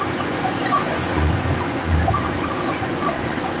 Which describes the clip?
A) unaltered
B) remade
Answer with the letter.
B